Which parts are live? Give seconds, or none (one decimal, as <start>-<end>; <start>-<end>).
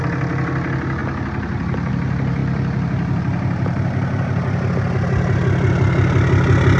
0.0-6.8